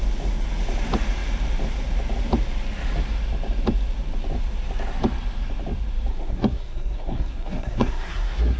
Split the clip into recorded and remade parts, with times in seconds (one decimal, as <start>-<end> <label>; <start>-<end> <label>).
0.0-6.1 recorded; 6.1-8.6 remade